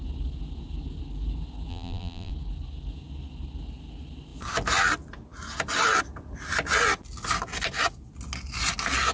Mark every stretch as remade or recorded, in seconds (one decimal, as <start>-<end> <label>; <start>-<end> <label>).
0.0-1.7 recorded; 1.7-2.3 remade; 2.3-9.1 recorded